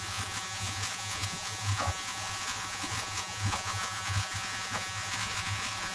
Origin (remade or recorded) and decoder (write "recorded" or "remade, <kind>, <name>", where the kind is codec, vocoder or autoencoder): remade, vocoder, Vocos